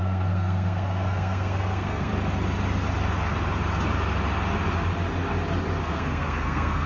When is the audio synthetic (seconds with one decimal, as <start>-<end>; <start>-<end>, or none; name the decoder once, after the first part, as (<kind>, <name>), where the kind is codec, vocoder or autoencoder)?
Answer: 0.0-2.1 (codec, SNAC); 5.8-6.9